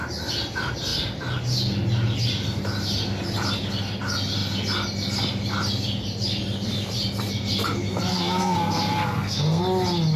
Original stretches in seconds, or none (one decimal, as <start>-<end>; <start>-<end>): 0.0-8.1; 9.6-10.2